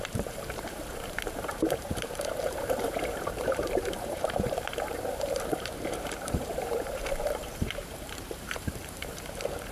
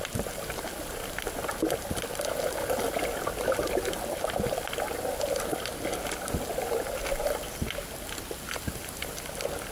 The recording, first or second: second